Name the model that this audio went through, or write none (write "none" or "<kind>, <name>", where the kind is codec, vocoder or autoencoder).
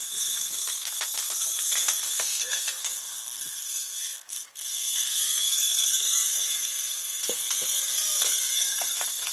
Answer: codec, SNAC